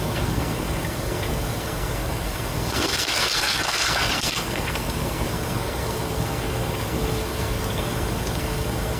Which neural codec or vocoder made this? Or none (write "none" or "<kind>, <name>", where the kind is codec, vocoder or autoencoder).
codec, SNAC